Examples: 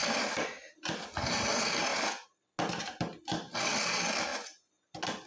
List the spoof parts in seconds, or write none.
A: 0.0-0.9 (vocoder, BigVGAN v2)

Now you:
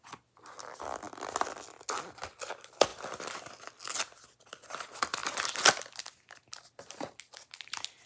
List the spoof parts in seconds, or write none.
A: none